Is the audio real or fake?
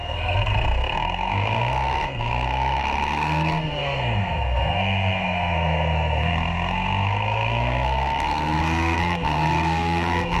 fake